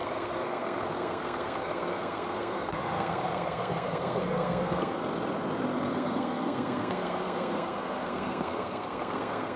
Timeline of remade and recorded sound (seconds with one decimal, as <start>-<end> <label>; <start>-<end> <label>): 0.0-5.0 remade; 5.0-5.9 recorded; 5.9-9.6 remade